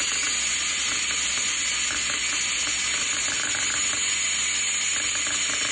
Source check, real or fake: real